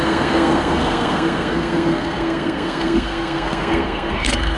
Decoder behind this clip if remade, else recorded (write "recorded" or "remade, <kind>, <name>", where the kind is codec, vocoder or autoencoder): remade, codec, SNAC